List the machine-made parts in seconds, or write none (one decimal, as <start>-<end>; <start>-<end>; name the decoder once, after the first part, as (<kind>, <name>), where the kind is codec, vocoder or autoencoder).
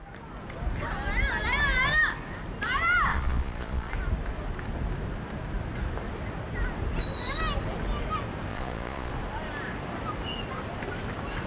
3.1-3.9 (vocoder, Vocos); 8.5-9.1